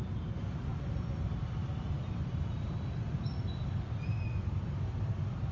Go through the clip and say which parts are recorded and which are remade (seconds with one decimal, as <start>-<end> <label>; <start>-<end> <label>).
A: 0.0-5.5 recorded